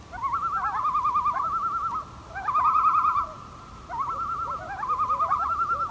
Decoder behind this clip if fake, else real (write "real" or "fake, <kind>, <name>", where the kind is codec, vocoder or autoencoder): real